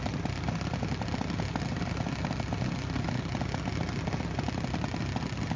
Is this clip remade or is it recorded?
recorded